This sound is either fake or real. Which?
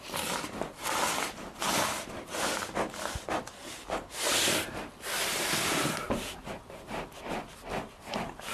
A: real